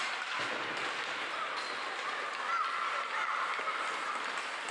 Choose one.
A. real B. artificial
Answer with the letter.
A